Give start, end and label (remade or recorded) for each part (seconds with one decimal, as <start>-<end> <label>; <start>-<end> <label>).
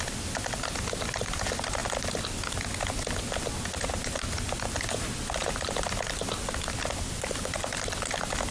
0.0-8.5 recorded